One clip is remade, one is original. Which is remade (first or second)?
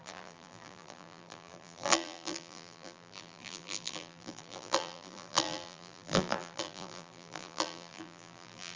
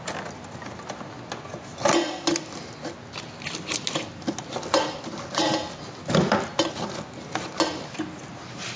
first